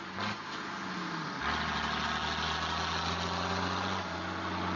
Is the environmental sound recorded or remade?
recorded